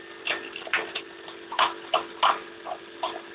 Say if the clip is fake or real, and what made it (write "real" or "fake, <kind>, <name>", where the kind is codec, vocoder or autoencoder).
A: real